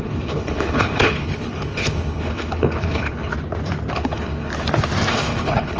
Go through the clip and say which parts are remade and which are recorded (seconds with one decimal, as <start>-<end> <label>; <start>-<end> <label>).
0.0-3.3 remade; 3.3-3.9 recorded; 3.9-4.5 remade; 4.5-5.1 recorded; 5.1-5.8 remade